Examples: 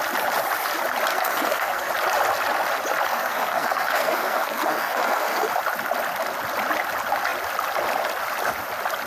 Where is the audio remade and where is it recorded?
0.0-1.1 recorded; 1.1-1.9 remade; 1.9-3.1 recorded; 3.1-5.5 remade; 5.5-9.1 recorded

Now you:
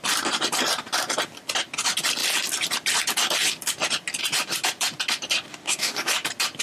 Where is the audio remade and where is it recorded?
0.0-5.5 recorded; 5.5-6.1 remade; 6.1-6.6 recorded

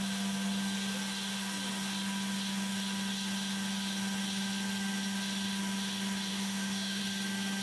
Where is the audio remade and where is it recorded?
0.0-6.3 recorded; 6.3-7.0 remade; 7.0-7.6 recorded

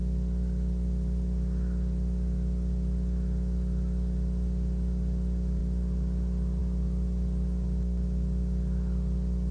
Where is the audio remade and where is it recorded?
0.0-9.5 recorded

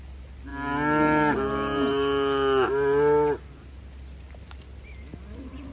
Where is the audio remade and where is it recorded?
0.0-5.7 recorded